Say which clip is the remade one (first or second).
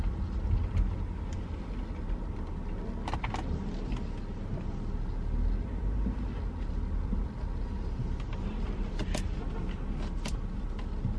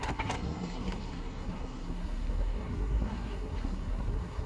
second